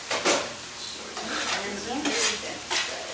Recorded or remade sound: recorded